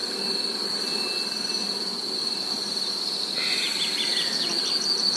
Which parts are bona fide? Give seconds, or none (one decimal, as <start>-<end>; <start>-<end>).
0.0-5.2